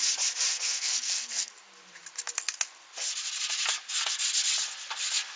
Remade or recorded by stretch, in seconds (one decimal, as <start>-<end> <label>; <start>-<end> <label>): 0.0-0.5 recorded; 0.5-1.5 remade; 1.5-5.4 recorded